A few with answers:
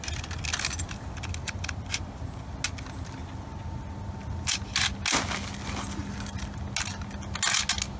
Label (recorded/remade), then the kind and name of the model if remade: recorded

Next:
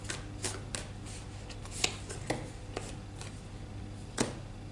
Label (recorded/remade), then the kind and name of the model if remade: recorded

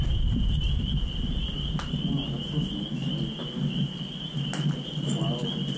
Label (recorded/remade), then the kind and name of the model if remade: recorded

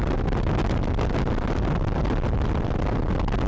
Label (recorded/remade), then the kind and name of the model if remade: recorded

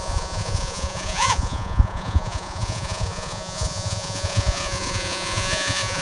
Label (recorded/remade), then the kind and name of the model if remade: remade, vocoder, Vocos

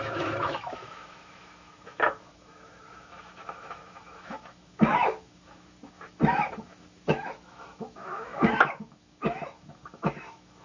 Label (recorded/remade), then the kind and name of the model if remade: remade, autoencoder, DAC-VAE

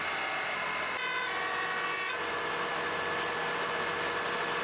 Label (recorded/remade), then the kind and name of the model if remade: recorded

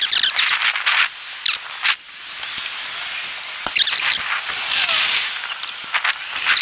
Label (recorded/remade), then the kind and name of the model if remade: recorded